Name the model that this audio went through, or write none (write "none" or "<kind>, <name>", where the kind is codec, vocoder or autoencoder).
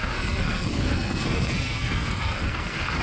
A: codec, SNAC